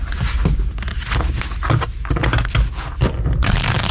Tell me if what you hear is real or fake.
real